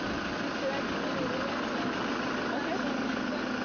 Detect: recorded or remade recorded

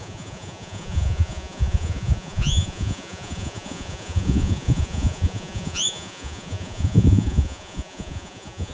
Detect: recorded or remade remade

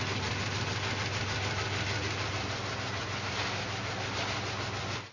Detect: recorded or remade recorded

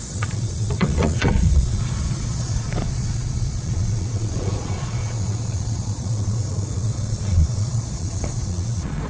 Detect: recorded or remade remade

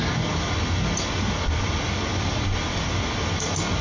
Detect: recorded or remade recorded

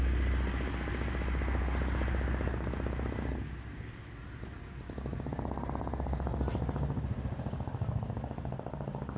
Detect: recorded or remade recorded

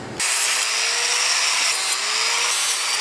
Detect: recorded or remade recorded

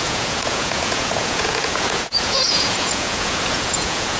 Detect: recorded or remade remade